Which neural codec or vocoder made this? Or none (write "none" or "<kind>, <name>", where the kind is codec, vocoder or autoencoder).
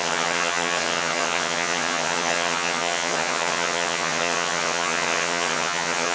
vocoder, HiFi-GAN